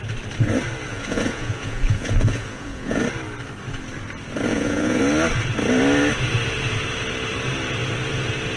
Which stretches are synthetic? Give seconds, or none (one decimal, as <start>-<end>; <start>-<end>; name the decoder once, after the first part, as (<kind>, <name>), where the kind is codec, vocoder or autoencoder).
0.9-3.0 (vocoder, Vocos); 4.5-5.0